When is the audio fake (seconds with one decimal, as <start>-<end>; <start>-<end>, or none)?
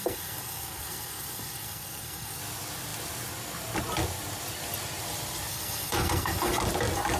0.0-2.4; 5.5-6.5